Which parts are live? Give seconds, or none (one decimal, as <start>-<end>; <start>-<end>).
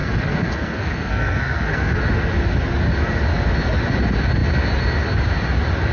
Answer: 2.0-5.9